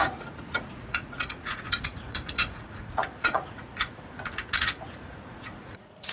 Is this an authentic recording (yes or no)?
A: no